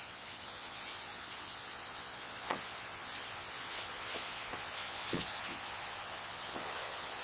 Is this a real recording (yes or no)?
no